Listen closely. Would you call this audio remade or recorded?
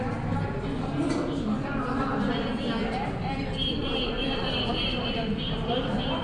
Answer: recorded